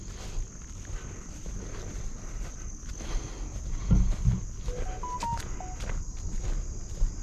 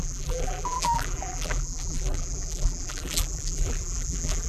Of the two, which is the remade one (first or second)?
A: second